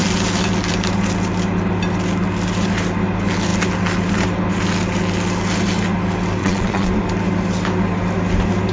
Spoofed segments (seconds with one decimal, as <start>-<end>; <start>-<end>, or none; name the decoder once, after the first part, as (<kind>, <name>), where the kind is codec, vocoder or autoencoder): 6.4-6.9 (vocoder, WaveNeXt)